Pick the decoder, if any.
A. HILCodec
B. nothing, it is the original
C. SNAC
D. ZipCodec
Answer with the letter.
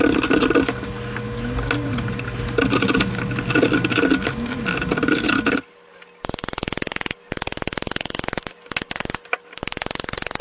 B